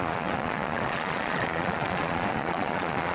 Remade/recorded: remade